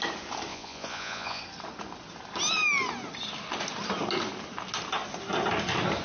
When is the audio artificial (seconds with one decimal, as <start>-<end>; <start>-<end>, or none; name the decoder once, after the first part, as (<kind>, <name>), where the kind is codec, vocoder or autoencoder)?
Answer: 0.5-1.4 (vocoder, Vocos)